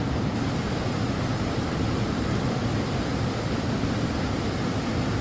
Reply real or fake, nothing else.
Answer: real